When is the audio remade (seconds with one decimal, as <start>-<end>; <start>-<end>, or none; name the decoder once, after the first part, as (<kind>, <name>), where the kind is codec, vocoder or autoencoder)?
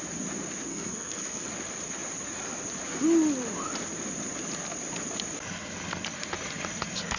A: 0.7-1.5 (codec, SNAC)